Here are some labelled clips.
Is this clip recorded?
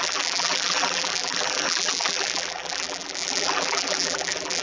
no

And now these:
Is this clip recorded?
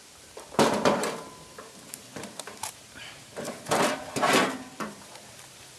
no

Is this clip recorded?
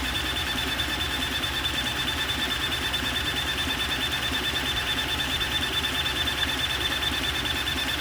no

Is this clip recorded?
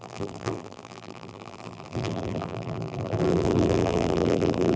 no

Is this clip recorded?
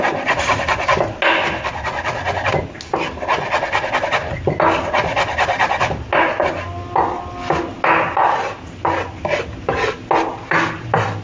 yes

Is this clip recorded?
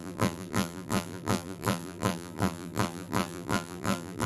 no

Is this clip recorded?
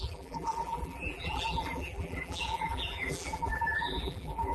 no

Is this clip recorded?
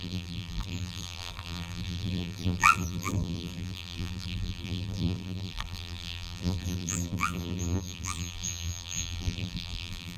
no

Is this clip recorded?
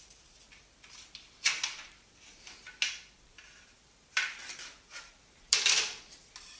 no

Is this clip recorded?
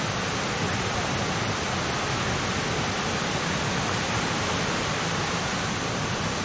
yes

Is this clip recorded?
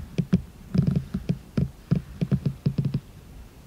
yes